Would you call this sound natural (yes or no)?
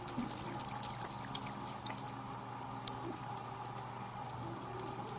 yes